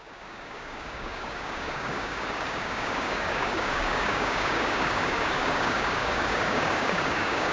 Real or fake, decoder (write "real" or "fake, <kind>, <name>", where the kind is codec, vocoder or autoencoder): fake, codec, DAC